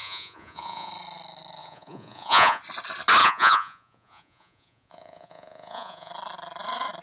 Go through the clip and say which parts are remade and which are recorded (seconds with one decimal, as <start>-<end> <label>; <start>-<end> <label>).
0.0-0.9 remade; 0.9-1.6 recorded; 1.6-2.6 remade; 2.6-3.2 recorded; 3.2-6.1 remade; 6.1-7.0 recorded